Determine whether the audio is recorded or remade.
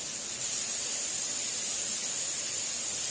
recorded